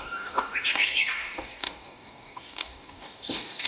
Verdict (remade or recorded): remade